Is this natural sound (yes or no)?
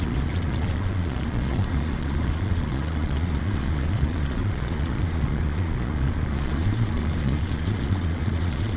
no